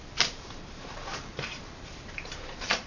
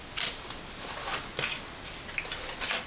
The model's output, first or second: first